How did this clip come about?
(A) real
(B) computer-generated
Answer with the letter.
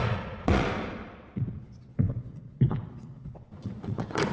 B